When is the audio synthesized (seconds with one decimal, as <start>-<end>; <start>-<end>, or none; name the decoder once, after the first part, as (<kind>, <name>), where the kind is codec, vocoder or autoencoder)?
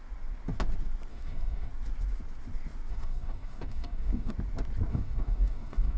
1.1-1.7 (codec, DAC); 2.9-4.3; 4.9-6.0